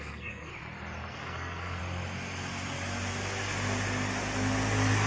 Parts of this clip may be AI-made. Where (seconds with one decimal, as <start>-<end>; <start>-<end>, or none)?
0.0-0.5; 1.1-1.8

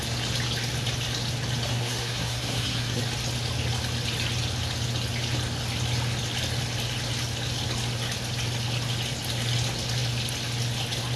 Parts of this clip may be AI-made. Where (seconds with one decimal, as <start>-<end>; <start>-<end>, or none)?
1.7-3.0

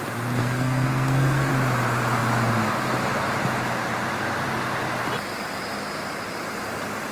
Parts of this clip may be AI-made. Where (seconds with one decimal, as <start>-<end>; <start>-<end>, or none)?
0.4-1.5

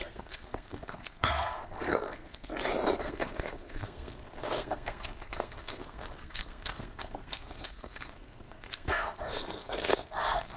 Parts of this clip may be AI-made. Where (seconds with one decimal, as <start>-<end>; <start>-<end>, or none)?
0.0-2.5; 3.0-10.6

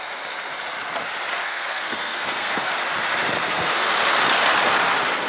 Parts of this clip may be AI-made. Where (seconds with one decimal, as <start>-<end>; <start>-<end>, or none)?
1.3-2.7; 3.4-3.9

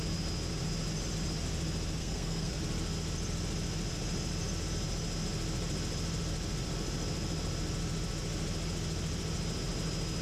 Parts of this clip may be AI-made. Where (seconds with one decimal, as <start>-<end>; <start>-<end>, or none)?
2.0-2.6

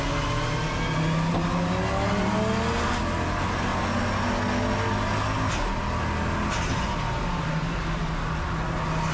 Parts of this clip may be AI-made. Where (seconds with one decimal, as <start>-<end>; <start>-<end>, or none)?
none